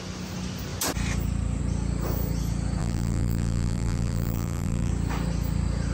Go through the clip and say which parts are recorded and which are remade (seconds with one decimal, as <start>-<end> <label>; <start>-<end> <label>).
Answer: 0.0-2.8 recorded; 2.8-4.9 remade; 4.9-5.9 recorded